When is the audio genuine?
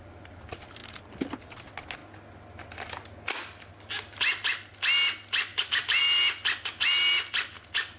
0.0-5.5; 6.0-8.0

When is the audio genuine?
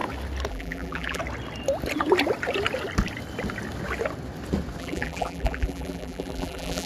0.0-0.5; 1.2-4.8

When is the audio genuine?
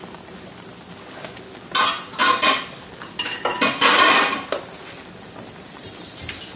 0.0-6.6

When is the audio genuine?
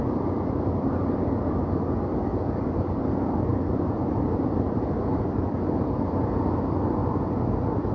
0.0-2.3; 3.1-3.5; 5.5-7.9